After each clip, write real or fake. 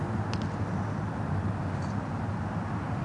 real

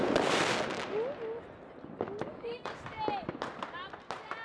real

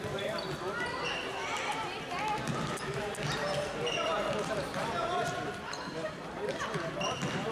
real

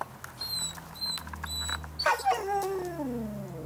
real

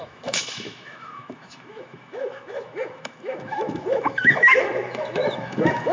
fake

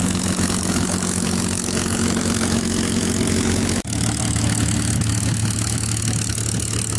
fake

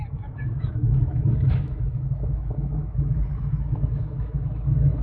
fake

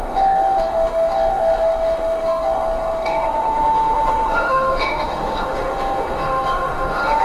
fake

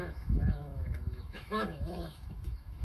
fake